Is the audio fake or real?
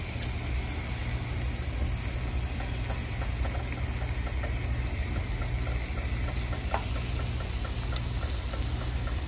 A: real